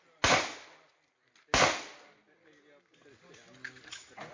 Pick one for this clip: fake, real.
real